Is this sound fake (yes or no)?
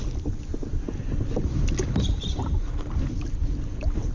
no